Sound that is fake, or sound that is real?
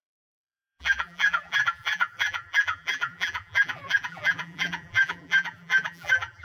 fake